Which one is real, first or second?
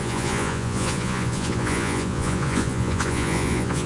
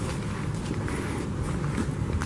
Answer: second